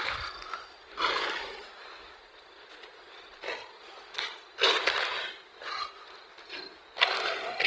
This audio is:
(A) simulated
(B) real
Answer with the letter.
B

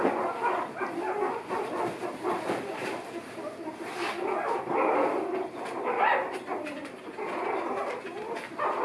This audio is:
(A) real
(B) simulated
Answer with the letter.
A